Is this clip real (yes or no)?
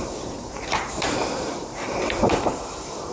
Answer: no